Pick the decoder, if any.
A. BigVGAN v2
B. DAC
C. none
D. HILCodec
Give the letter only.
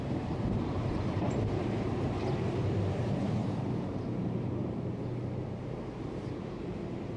A